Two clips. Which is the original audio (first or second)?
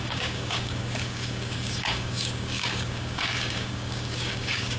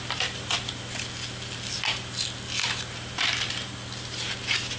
second